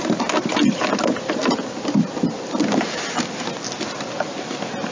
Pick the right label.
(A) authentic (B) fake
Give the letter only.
A